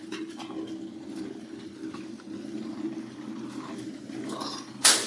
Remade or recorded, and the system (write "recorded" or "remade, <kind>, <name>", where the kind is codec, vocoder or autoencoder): remade, vocoder, BigVGAN v2